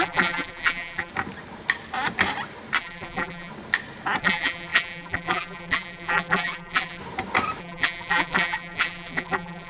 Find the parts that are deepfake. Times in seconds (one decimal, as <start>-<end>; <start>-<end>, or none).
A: 0.0-1.1; 2.8-3.5; 4.2-7.0; 7.6-9.7